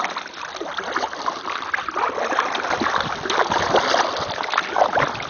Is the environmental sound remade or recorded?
recorded